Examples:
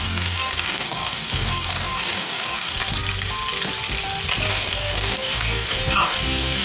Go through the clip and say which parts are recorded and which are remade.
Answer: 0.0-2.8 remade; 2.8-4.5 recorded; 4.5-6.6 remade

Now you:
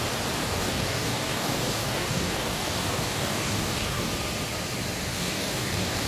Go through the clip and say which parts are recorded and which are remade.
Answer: 0.0-0.4 recorded; 0.4-4.1 remade; 4.1-5.1 recorded; 5.1-6.1 remade

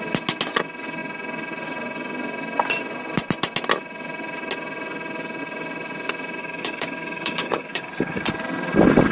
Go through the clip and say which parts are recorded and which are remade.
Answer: 0.0-6.4 recorded; 6.4-8.2 remade; 8.2-9.1 recorded